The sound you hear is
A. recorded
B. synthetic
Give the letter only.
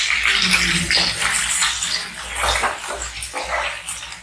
A